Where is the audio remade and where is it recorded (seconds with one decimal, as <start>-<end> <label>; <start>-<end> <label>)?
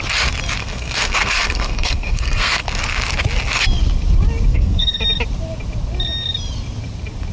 0.0-0.6 recorded; 0.6-2.6 remade; 2.6-4.5 recorded; 4.5-5.0 remade; 5.0-7.3 recorded